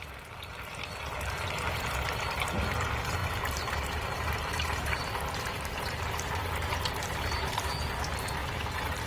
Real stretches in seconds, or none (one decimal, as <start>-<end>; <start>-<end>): 0.0-3.2; 7.7-8.4